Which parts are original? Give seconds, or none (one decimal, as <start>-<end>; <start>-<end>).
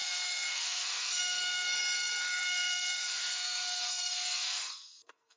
none